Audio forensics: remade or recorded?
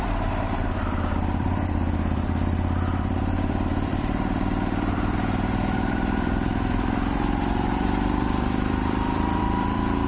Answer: remade